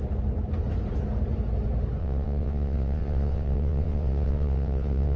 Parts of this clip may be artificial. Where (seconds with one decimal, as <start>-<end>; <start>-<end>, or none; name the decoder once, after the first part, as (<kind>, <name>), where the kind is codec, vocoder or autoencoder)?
2.0-5.2 (vocoder, WaveNeXt)